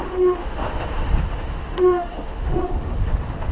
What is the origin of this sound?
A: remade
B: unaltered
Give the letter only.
A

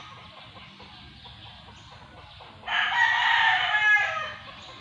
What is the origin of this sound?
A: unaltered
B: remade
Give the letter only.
A